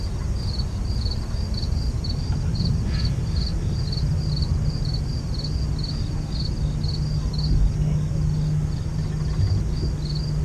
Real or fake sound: real